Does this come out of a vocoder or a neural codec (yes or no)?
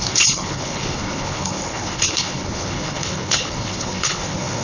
yes